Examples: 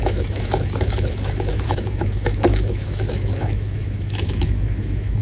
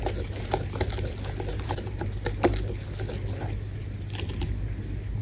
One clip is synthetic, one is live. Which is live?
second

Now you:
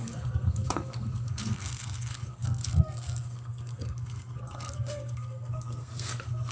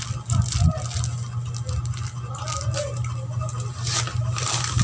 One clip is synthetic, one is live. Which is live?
second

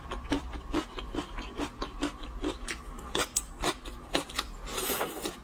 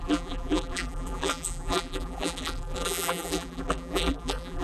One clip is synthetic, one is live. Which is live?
first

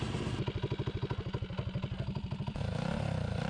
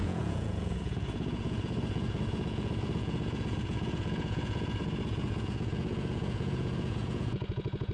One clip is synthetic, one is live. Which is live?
first